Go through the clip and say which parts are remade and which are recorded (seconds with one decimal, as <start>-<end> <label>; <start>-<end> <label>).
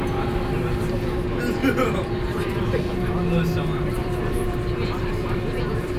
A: 0.0-1.6 recorded; 1.6-2.5 remade; 2.5-4.0 recorded; 4.0-6.0 remade